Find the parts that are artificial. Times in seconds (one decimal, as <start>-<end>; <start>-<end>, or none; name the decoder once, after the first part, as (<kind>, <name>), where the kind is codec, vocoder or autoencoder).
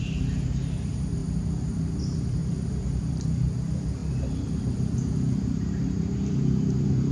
0.0-1.2 (vocoder, BigVGAN v2); 2.0-4.0; 5.5-7.1